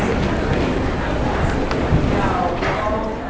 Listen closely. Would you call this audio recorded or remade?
recorded